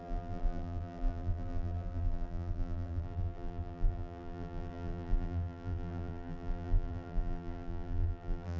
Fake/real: fake